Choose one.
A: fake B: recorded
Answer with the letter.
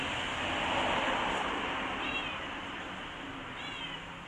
B